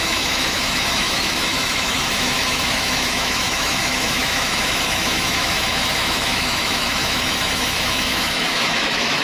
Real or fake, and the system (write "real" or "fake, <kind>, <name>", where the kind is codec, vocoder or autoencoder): fake, autoencoder, DAC-VAE